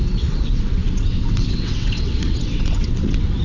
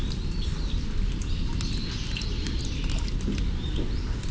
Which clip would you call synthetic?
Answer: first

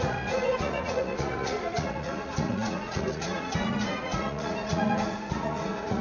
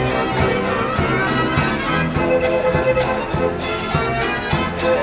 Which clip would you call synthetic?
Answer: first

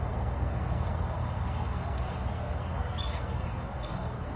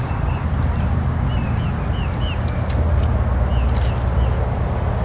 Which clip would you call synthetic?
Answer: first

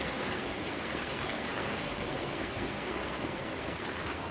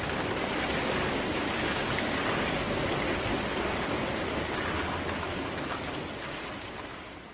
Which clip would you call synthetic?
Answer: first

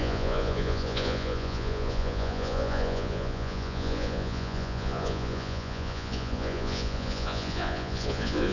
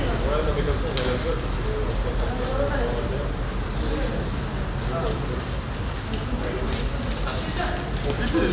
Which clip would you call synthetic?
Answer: first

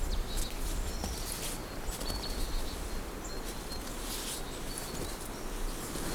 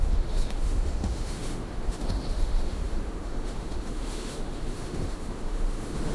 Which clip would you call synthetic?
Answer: second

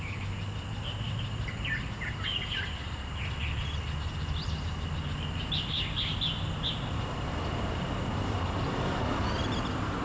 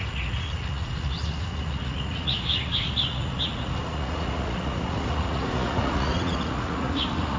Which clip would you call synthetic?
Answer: second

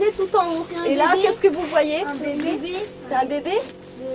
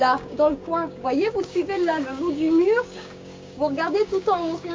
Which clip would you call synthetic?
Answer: second